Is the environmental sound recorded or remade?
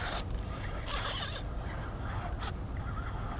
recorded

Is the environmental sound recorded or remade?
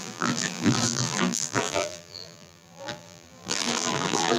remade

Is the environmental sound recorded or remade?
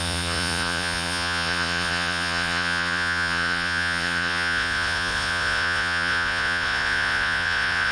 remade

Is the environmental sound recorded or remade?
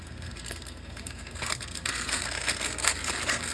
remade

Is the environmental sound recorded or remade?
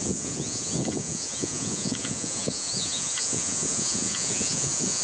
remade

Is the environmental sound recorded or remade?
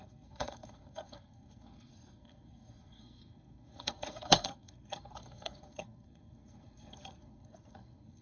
remade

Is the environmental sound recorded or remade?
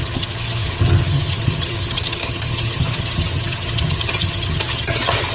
remade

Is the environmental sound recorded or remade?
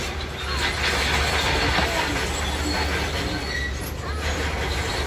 recorded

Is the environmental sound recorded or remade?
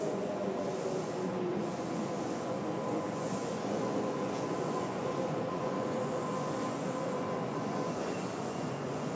remade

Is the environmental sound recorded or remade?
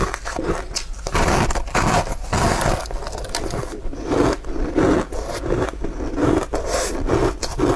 recorded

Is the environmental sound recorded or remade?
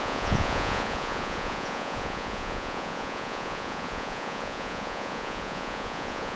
remade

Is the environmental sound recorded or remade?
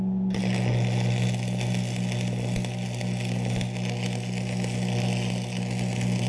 recorded